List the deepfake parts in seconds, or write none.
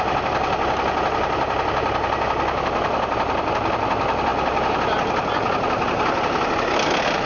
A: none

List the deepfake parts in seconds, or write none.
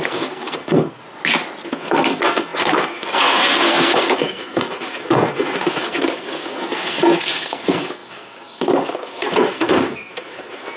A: 0.0-1.0 (codec, SNAC); 1.7-10.8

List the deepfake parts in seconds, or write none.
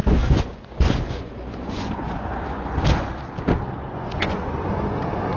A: 0.0-3.2 (vocoder, Vocos); 3.8-5.0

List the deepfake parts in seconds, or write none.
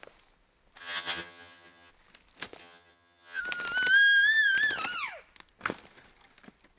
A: 0.8-1.9 (vocoder, HiFi-GAN); 2.6-3.4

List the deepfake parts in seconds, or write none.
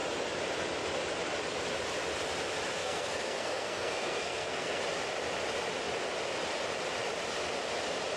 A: 2.8-4.8 (codec, SNAC)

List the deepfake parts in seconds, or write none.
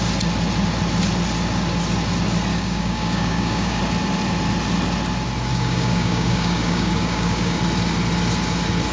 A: 2.5-3.8 (codec, DAC); 5.5-7.6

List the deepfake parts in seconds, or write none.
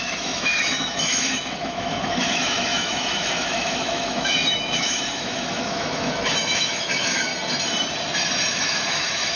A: 0.0-7.3 (autoencoder, DAC-VAE); 8.5-9.4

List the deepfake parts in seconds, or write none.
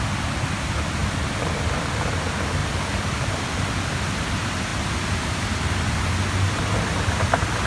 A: 1.0-1.5 (vocoder, BigVGAN v2); 2.6-3.8; 4.7-5.4